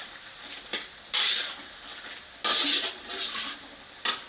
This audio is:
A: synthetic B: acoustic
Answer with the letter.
B